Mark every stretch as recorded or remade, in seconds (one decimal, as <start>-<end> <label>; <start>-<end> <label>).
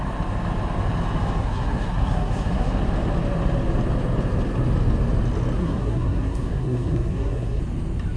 0.0-1.4 recorded; 1.4-2.8 remade; 2.8-5.6 recorded; 5.6-7.6 remade; 7.6-8.2 recorded